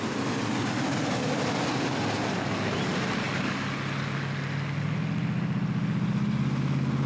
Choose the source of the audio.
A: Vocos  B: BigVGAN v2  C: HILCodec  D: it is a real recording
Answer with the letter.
D